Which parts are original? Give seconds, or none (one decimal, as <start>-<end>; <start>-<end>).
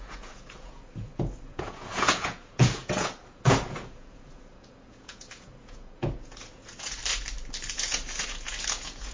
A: 7.0-7.7